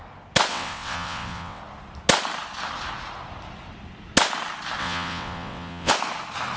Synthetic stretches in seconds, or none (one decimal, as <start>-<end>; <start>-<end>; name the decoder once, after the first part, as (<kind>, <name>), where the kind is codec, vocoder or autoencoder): 0.5-1.6 (vocoder, WaveNeXt); 4.8-5.9